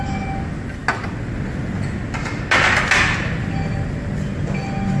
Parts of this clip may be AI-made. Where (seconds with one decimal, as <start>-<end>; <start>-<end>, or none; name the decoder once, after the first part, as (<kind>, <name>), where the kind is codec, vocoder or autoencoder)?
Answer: none